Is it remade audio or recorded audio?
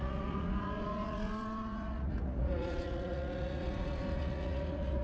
remade